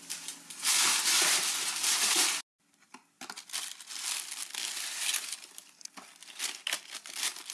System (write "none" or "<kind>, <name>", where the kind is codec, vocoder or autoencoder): none